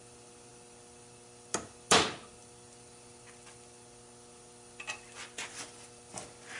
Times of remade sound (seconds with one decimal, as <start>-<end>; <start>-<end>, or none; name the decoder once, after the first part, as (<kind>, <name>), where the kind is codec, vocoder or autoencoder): none